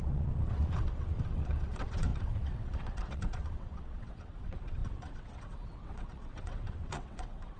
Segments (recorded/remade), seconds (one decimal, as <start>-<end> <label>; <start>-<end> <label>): 0.0-7.6 remade